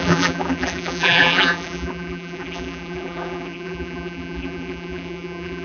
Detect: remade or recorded remade